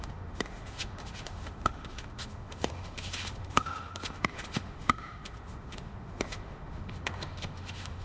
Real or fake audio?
fake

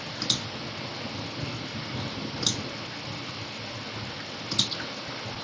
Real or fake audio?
real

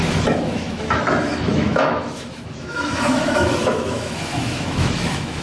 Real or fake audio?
fake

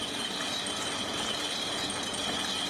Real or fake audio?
real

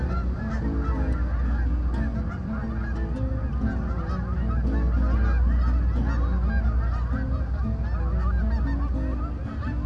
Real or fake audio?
real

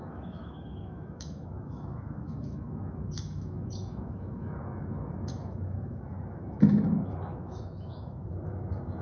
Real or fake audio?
fake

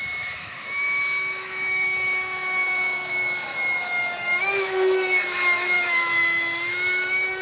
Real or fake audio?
fake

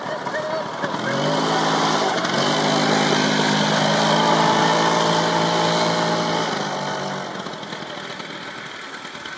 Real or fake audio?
real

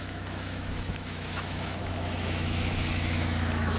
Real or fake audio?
fake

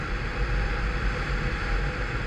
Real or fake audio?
real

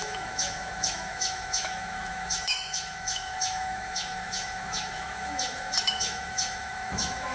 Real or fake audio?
fake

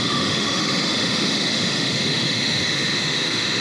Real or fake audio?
fake